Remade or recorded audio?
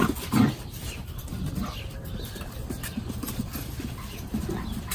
recorded